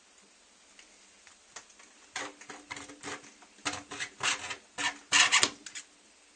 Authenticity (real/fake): real